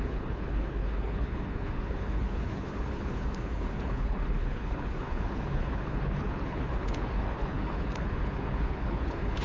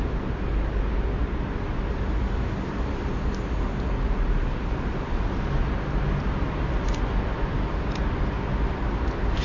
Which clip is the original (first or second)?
second